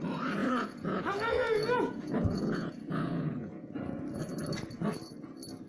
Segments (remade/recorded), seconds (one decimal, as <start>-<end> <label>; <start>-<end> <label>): 0.0-0.4 recorded; 0.4-3.8 remade; 3.8-5.7 recorded